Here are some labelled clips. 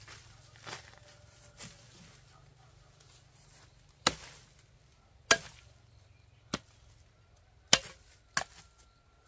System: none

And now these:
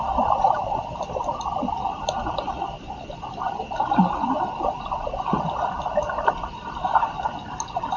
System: none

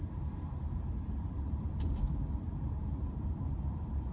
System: vocoder, BigVGAN v2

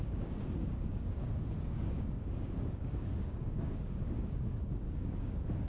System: codec, DAC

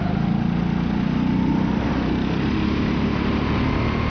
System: none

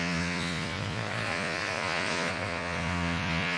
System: vocoder, Vocos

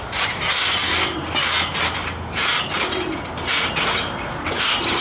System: none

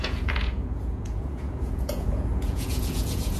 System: vocoder, Vocos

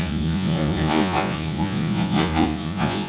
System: vocoder, Vocos